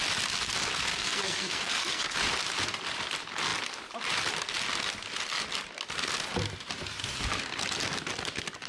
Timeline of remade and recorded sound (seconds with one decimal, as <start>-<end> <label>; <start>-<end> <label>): 0.0-0.9 recorded; 0.9-2.0 remade; 2.0-8.7 recorded

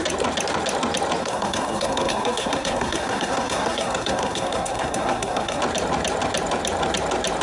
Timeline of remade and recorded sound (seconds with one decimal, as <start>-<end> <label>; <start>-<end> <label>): 0.0-1.2 recorded; 1.2-5.6 remade; 5.6-7.4 recorded